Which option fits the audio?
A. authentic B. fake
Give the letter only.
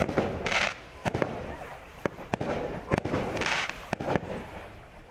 A